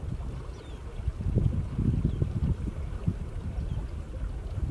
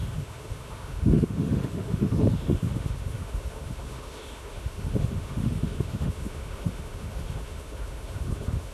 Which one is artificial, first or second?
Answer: second